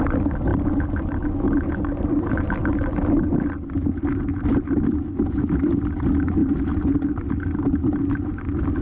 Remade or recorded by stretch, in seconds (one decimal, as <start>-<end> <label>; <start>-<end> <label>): 0.0-8.8 recorded